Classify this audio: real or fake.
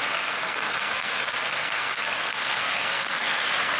fake